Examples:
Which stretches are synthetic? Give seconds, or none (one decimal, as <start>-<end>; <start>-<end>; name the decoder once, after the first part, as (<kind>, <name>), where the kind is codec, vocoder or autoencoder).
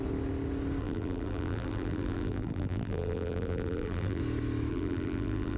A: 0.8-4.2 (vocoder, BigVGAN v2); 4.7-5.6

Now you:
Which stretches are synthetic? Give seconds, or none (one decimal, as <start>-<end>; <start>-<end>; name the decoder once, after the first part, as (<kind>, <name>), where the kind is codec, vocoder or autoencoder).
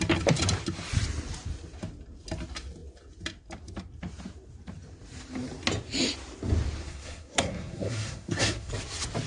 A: 6.8-8.7 (codec, SNAC)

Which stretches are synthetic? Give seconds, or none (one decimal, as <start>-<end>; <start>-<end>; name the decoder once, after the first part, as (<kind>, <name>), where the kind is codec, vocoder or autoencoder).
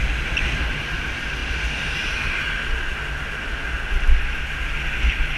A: none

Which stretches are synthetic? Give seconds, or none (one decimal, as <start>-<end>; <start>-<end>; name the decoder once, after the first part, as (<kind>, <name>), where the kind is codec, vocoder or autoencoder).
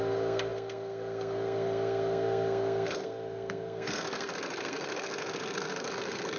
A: 0.0-6.4 (codec, SNAC)